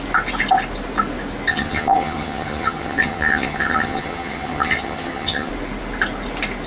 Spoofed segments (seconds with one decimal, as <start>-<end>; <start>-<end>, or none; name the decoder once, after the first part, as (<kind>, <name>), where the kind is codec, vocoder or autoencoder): 1.5-5.5 (vocoder, HiFi-GAN)